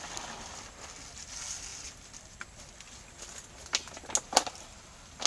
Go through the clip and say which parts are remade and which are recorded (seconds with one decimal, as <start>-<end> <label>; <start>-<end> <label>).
0.0-5.3 recorded